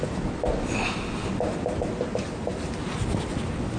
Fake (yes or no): no